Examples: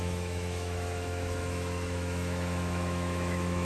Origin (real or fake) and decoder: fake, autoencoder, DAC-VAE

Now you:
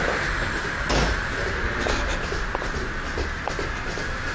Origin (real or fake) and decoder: real